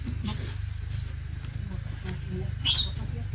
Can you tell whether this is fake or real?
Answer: real